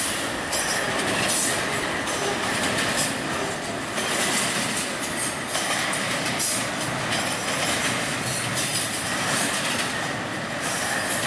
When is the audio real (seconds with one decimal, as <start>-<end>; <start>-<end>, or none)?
0.0-11.3